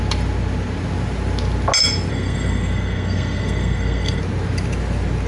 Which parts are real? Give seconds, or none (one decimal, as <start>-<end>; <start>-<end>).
0.0-2.1; 4.2-5.3